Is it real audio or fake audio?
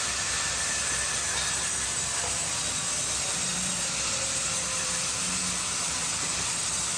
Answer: fake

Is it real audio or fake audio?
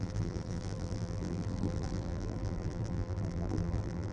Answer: fake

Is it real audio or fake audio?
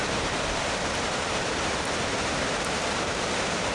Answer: fake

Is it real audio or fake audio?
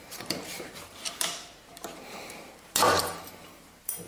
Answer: fake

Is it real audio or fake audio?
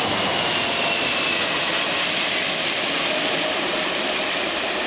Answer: fake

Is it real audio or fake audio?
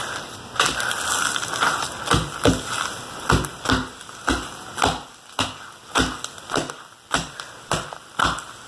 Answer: real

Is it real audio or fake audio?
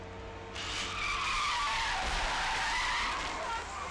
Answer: real